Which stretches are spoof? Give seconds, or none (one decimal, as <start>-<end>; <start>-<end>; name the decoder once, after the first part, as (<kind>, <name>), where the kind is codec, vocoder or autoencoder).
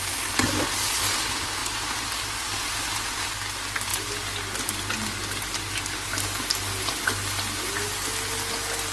none